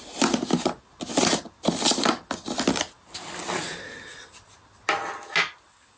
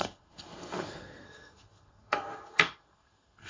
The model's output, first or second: second